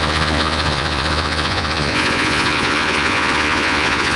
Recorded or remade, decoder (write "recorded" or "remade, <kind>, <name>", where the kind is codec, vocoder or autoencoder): remade, vocoder, Vocos